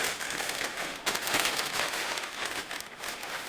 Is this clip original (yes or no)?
no